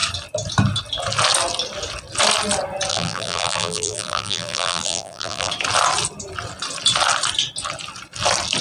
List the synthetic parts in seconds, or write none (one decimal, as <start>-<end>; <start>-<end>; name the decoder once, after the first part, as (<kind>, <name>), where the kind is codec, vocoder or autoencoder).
2.9-5.5 (vocoder, BigVGAN v2)